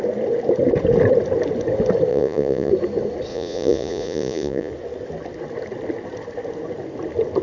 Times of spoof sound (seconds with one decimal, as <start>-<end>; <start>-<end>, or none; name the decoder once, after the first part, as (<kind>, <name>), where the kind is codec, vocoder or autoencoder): 2.1-2.7 (vocoder, Vocos); 3.3-4.7